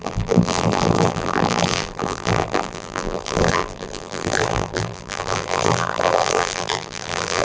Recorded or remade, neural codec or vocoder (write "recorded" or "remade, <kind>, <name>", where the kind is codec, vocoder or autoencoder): remade, vocoder, BigVGAN v2